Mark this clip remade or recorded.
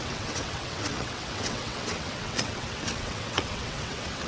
remade